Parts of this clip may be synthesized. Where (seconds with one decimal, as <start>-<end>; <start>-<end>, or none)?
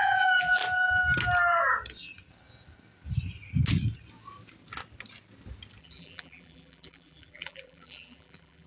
0.0-0.6; 5.8-8.7